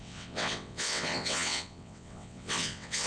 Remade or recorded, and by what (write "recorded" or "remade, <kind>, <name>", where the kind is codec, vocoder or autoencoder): remade, vocoder, WaveNeXt